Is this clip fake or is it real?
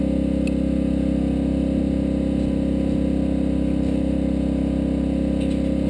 real